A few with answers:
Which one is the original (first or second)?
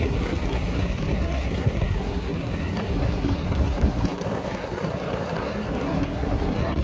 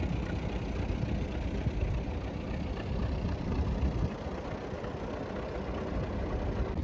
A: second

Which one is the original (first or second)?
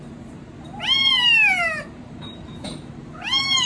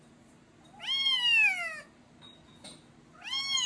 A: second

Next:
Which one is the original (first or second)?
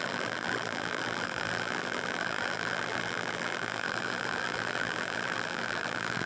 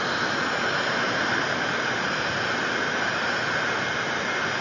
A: second